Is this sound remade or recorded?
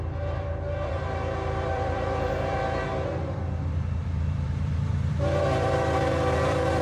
remade